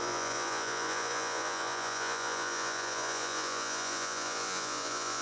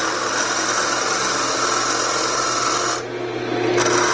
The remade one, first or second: first